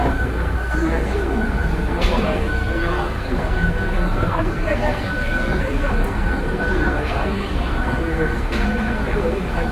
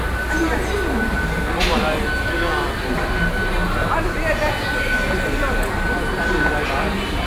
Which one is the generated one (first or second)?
first